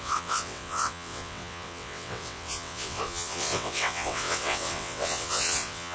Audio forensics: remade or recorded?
remade